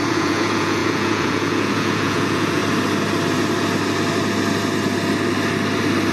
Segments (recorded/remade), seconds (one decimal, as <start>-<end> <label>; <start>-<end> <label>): 0.0-2.6 remade; 2.6-6.1 recorded